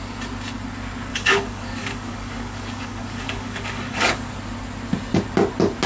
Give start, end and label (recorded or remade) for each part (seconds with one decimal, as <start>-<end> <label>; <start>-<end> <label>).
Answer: 0.0-1.1 recorded; 1.1-4.3 remade; 4.3-5.9 recorded